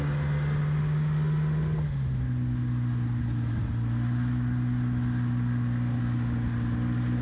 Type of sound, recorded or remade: recorded